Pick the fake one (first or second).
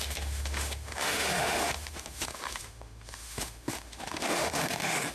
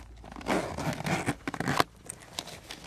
first